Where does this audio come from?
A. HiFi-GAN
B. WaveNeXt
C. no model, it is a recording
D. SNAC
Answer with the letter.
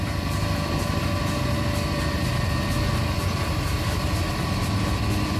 C